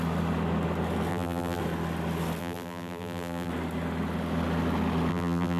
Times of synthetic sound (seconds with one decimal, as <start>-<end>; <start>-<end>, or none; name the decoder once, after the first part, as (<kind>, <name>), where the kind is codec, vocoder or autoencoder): 1.1-1.6 (vocoder, BigVGAN v2); 2.4-3.5; 5.1-5.6